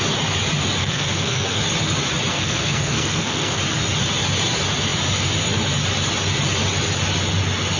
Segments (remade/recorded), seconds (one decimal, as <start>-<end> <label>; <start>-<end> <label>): 0.0-0.8 recorded; 0.8-1.6 remade; 1.6-2.3 recorded; 2.3-3.6 remade; 3.6-7.8 recorded